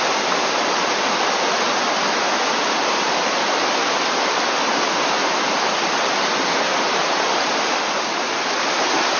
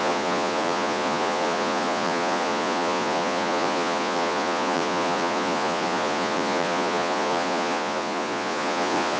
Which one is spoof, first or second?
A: second